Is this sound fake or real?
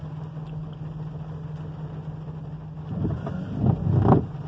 real